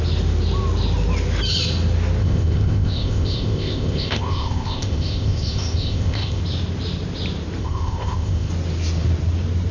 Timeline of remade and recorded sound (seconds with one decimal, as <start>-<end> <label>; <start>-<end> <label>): 0.0-2.2 recorded; 2.2-6.4 remade; 6.4-7.6 recorded; 7.6-8.5 remade; 8.5-9.7 recorded